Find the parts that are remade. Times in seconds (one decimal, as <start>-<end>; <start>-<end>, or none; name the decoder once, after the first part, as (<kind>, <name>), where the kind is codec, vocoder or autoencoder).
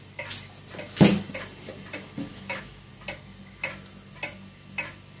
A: 2.3-2.9 (autoencoder, DAC-VAE)